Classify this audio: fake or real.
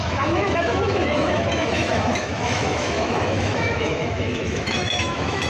fake